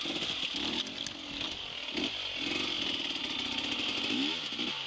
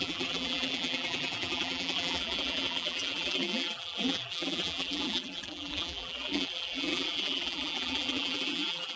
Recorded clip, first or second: first